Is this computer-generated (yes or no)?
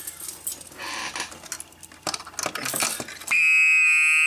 no